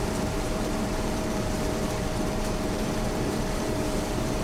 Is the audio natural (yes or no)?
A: no